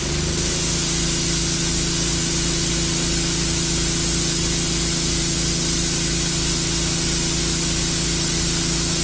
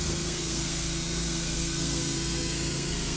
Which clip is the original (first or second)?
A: first